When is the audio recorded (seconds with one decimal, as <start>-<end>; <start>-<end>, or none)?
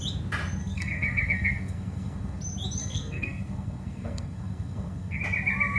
0.0-0.6; 2.4-2.8; 5.2-5.8